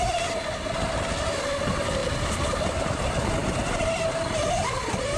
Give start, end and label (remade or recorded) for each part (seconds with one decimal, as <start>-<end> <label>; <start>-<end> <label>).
0.0-2.0 recorded; 2.0-2.8 remade; 2.8-5.2 recorded